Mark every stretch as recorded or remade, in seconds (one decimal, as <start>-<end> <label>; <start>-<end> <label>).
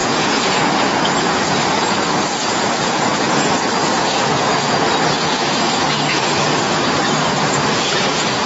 0.0-8.5 remade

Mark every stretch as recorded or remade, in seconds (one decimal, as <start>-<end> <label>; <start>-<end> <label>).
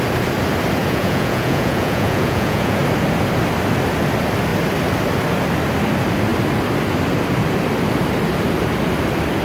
0.0-0.8 recorded; 0.8-2.8 remade; 2.8-9.4 recorded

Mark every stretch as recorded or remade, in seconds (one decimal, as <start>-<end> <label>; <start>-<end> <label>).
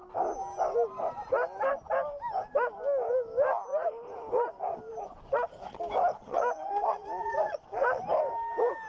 0.0-6.2 recorded; 6.2-8.0 remade; 8.0-8.9 recorded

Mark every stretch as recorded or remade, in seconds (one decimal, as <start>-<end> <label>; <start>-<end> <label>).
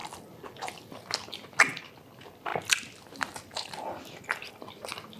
0.0-5.2 recorded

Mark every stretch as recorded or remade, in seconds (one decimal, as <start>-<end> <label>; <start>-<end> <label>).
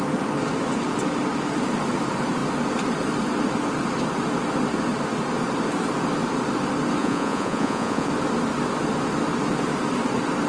0.0-7.0 recorded; 7.0-8.1 remade; 8.1-10.5 recorded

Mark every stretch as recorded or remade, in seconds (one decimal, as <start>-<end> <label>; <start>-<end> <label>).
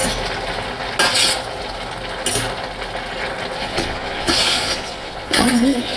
0.0-3.6 recorded; 3.6-6.0 remade